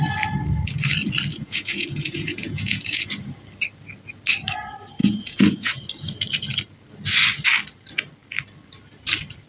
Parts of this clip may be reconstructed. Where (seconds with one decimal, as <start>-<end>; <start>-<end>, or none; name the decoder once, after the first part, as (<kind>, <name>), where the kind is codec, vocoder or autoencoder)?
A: 1.3-3.0 (vocoder, Vocos); 5.0-5.7